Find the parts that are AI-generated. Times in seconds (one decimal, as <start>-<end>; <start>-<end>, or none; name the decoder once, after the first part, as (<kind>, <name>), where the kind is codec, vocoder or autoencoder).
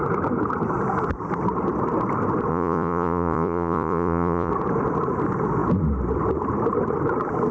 2.5-4.5 (vocoder, Vocos)